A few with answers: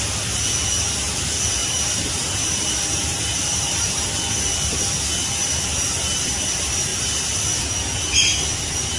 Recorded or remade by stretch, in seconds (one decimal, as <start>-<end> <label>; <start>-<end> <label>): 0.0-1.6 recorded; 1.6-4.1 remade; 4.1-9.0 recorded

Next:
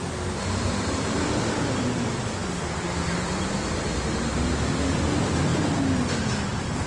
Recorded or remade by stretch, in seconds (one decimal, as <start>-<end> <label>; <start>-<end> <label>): 0.0-6.9 recorded

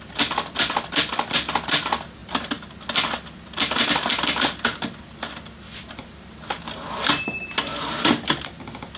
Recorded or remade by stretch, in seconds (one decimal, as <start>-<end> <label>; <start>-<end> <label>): 0.0-9.0 recorded

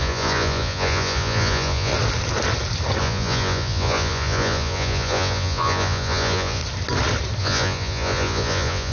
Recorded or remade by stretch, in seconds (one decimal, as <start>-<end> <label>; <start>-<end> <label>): 0.0-1.9 remade; 1.9-3.0 recorded; 3.0-6.6 remade; 6.6-7.4 recorded; 7.4-8.9 remade

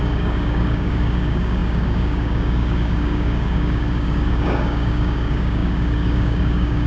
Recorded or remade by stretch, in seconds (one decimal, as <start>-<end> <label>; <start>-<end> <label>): 0.0-6.9 remade